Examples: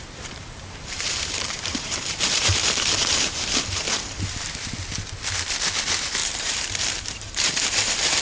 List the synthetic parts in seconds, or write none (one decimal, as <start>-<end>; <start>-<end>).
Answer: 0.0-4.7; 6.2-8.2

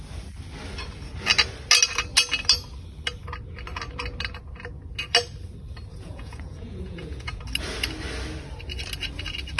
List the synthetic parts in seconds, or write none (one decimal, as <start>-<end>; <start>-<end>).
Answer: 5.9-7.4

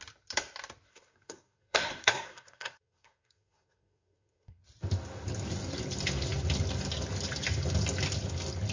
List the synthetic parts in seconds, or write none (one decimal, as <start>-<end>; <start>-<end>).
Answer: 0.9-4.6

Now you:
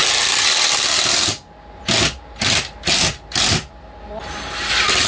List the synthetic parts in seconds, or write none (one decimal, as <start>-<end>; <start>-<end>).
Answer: none